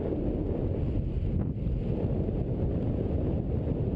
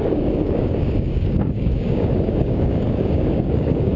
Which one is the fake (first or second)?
second